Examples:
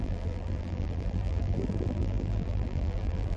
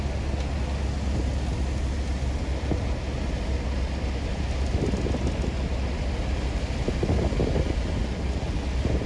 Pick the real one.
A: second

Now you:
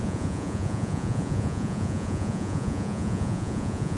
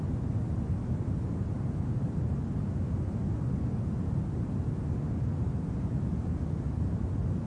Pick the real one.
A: second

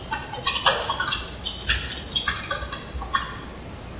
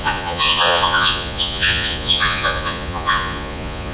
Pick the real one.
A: first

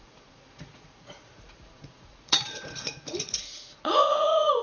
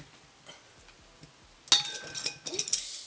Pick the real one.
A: second